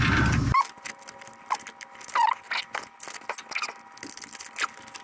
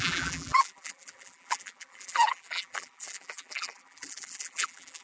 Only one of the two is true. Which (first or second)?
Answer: first